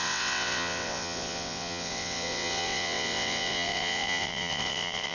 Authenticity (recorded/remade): remade